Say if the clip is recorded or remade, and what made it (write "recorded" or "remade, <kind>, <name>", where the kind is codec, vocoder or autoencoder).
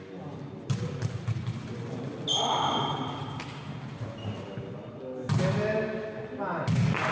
recorded